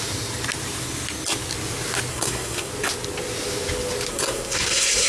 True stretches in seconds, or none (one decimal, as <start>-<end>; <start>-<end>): 0.0-2.1; 2.7-4.1